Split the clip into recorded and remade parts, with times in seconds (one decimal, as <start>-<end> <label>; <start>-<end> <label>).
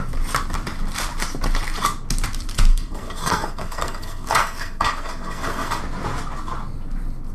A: 0.0-2.7 recorded; 2.7-5.8 remade; 5.8-7.3 recorded